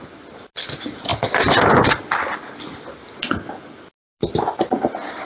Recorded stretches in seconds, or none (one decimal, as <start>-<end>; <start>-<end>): 0.0-5.2